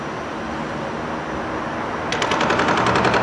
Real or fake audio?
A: real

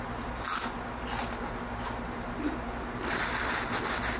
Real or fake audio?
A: real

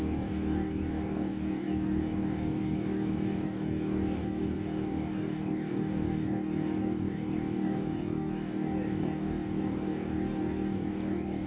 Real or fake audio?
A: fake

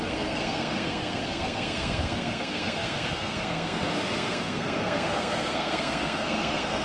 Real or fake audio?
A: fake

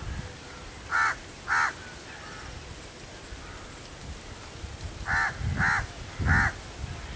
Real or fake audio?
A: real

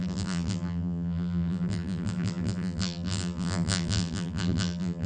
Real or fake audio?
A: fake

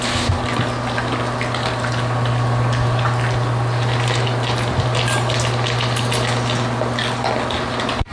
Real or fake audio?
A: real